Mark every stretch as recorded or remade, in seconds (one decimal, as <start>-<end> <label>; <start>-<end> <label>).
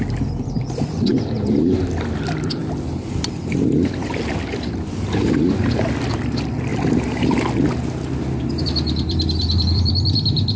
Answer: 0.0-1.1 remade; 1.1-1.8 recorded; 1.8-2.6 remade; 2.6-6.0 recorded; 6.0-6.7 remade; 6.7-8.6 recorded; 8.6-10.6 remade